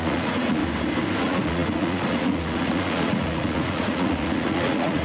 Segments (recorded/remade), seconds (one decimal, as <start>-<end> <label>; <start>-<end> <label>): 0.0-0.6 remade; 0.6-1.2 recorded; 1.2-5.0 remade